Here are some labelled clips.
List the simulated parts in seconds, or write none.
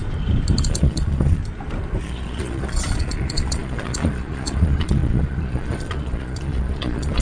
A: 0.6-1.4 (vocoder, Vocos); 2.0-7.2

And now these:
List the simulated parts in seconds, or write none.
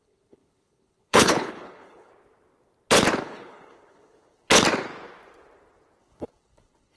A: 0.0-2.1 (codec, HILCodec); 3.2-4.5; 6.0-7.0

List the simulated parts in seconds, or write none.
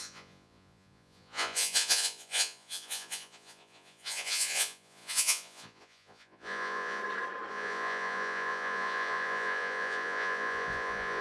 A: 0.0-7.0 (vocoder, Vocos); 7.5-11.2